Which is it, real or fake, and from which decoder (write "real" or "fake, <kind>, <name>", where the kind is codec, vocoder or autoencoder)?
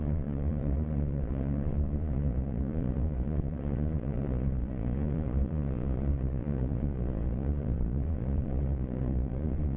fake, vocoder, Vocos